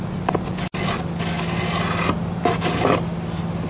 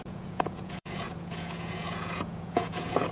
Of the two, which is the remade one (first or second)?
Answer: second